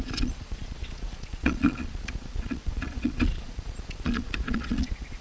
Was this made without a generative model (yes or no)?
no